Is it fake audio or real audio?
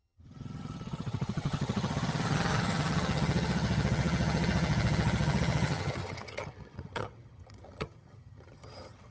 fake